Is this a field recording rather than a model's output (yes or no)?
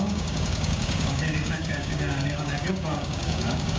no